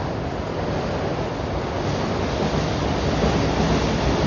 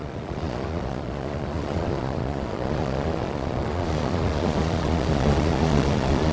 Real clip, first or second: first